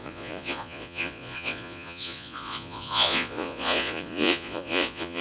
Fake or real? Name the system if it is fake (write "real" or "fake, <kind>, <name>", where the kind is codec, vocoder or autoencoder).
fake, vocoder, Vocos